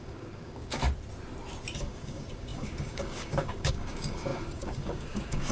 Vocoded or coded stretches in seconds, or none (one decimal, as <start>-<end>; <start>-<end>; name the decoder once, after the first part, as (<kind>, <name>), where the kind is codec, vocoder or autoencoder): 0.0-0.8 (codec, DAC); 1.8-5.5